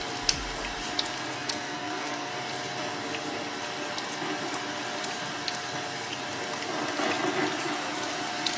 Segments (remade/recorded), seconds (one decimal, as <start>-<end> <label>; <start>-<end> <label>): 0.0-1.3 recorded; 1.3-2.3 remade; 2.3-8.6 recorded